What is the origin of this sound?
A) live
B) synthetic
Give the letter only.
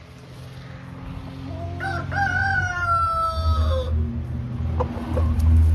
A